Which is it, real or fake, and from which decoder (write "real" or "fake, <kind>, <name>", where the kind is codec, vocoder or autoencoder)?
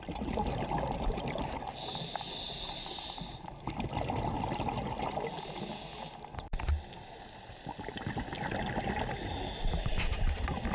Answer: real